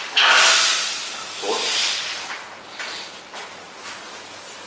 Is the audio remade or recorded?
recorded